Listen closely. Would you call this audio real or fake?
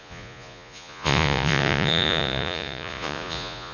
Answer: fake